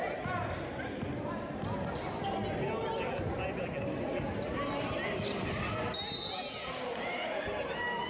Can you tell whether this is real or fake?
real